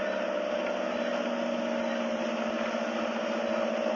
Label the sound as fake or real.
real